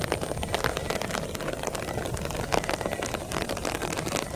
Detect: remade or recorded recorded